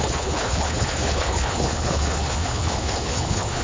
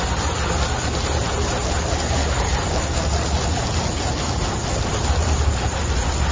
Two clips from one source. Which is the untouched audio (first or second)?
second